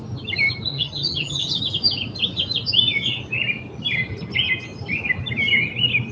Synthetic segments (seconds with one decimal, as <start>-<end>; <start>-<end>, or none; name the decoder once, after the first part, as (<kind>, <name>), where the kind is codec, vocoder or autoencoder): 0.7-1.6 (vocoder, HiFi-GAN)